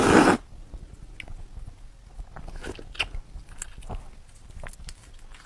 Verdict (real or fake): real